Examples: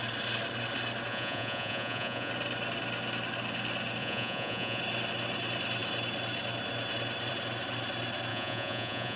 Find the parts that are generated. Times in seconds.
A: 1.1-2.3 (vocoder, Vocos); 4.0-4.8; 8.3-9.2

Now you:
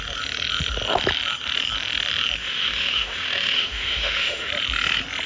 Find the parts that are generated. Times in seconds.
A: 2.4-4.5 (autoencoder, DAC-VAE)